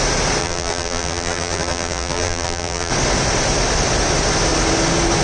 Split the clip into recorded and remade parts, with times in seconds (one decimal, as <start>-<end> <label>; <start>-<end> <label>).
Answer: 0.0-0.4 recorded; 0.4-2.9 remade; 2.9-5.2 recorded